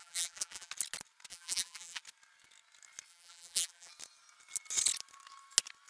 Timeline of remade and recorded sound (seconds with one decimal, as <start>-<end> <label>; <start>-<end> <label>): 0.0-0.7 remade; 0.7-1.3 recorded; 1.3-2.0 remade; 2.0-3.1 recorded; 3.1-3.9 remade; 3.9-5.9 recorded